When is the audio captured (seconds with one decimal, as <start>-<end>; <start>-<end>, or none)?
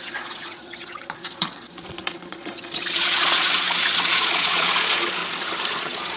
5.2-5.8